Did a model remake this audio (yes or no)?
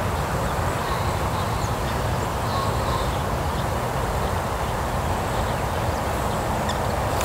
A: no